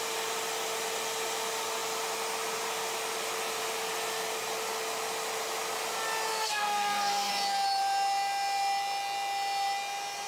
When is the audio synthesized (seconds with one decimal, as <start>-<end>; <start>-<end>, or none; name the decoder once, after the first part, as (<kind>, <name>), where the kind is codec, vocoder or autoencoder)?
6.3-7.3 (codec, SNAC)